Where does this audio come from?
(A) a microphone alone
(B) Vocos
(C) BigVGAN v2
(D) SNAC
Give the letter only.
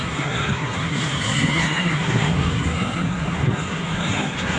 D